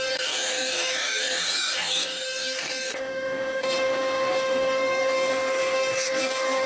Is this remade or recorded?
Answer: remade